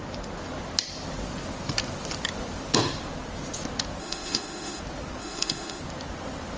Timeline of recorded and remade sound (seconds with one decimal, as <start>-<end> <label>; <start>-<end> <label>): 0.0-4.0 recorded; 4.0-4.8 remade; 4.8-5.2 recorded; 5.2-5.8 remade; 5.8-6.6 recorded